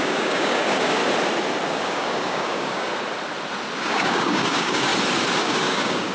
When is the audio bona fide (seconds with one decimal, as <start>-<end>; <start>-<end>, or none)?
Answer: 1.0-1.7; 2.9-3.8; 4.9-5.4